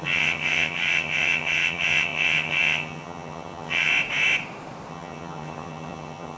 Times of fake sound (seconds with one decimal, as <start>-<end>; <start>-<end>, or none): 0.0-3.9; 4.9-6.4